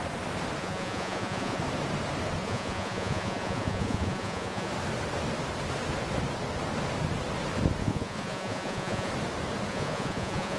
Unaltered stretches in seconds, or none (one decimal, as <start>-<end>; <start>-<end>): 0.0-0.6; 1.6-2.4; 4.7-7.8; 9.1-9.7